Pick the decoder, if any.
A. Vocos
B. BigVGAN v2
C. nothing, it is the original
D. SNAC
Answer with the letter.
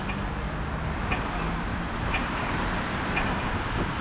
C